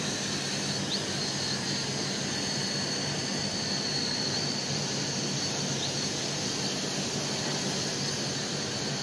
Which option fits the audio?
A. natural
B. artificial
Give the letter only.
A